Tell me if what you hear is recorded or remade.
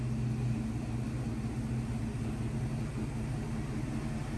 recorded